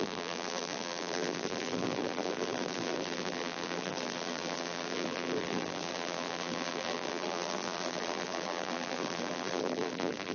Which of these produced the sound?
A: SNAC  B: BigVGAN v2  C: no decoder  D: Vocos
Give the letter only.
B